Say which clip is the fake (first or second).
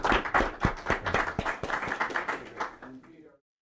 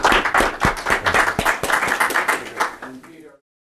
first